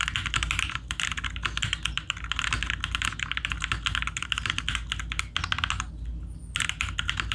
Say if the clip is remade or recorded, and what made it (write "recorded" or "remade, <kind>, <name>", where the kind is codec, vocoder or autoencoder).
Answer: recorded